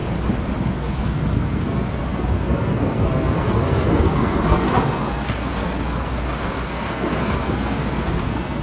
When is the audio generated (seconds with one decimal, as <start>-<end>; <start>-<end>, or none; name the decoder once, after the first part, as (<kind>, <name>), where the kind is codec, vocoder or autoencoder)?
0.7-8.6 (codec, SNAC)

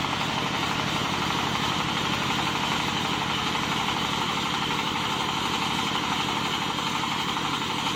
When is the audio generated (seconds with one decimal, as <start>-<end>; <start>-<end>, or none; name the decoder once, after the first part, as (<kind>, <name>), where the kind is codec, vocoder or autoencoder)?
none

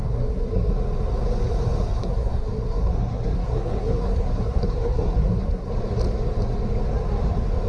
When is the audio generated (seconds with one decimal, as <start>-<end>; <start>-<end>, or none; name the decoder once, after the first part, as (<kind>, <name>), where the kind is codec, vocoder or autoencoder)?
0.0-0.7 (codec, SNAC); 2.0-5.7

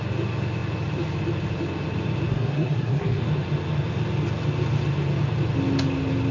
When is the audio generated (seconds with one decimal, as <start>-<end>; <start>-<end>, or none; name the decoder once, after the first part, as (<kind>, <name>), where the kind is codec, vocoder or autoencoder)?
2.3-3.2 (codec, SNAC)

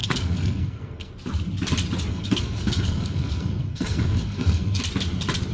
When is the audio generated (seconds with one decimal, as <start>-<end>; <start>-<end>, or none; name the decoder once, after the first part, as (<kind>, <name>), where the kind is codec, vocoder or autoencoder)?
0.0-1.1 (codec, SNAC); 2.1-4.8